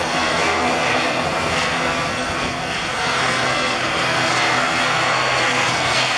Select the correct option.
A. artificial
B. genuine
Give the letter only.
A